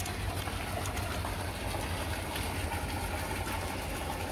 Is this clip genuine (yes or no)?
yes